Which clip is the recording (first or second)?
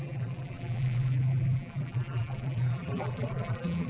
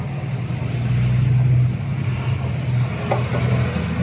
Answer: second